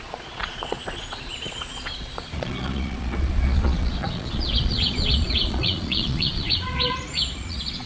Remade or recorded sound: remade